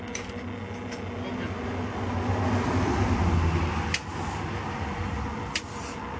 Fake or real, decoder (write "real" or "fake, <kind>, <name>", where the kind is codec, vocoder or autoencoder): real